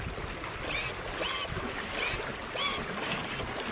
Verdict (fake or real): real